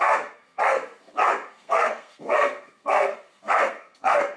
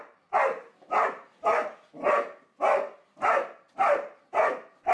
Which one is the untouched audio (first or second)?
second